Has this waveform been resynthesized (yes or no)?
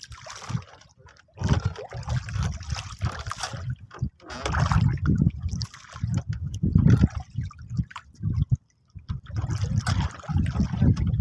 no